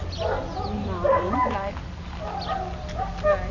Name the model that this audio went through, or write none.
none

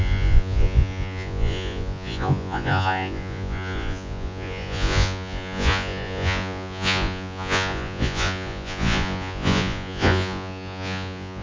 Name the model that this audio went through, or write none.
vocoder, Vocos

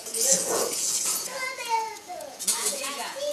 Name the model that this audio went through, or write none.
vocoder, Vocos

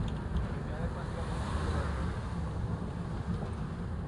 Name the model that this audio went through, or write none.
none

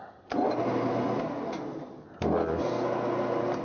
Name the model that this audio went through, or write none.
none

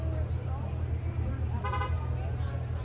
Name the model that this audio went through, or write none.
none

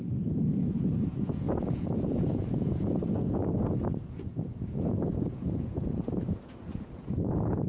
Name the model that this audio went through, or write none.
vocoder, Vocos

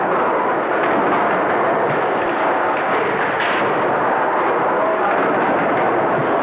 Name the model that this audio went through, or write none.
none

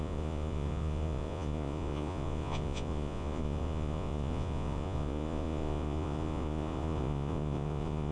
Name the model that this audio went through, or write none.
vocoder, Vocos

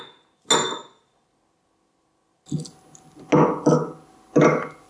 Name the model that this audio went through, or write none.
none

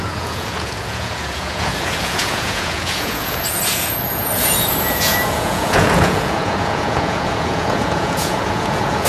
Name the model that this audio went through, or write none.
vocoder, Vocos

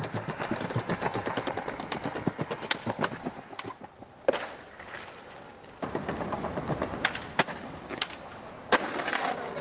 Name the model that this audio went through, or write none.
none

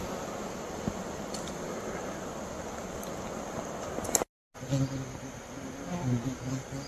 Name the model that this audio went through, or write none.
none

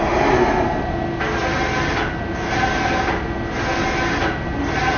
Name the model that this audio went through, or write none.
none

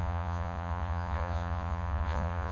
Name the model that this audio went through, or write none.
vocoder, Vocos